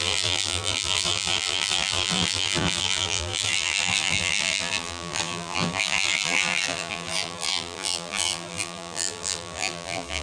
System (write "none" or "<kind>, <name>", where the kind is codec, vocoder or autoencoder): vocoder, BigVGAN v2